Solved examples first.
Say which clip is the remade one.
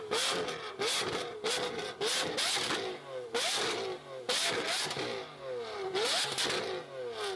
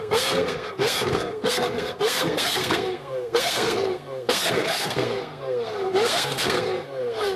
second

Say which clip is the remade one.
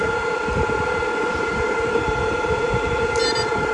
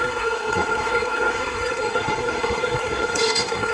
second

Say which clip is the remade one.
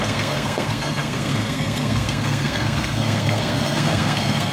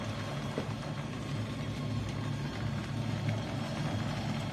first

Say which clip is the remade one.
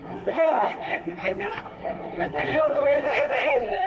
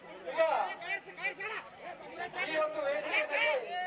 first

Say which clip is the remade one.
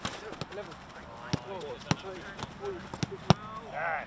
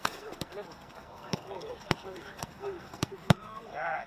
second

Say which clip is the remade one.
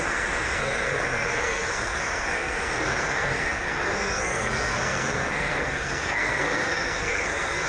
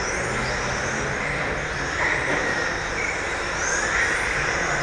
first